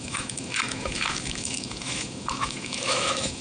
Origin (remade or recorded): remade